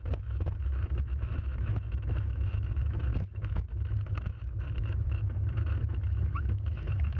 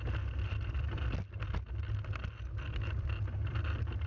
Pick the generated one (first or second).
first